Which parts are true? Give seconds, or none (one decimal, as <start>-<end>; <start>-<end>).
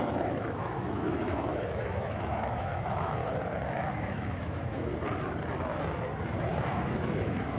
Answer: 3.2-4.0; 4.9-6.6